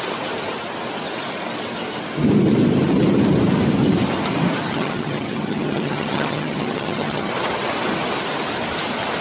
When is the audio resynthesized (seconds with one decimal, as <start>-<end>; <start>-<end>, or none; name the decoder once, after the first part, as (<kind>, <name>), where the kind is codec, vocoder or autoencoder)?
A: 4.6-7.3 (vocoder, HiFi-GAN)